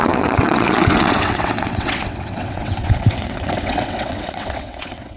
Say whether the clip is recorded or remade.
remade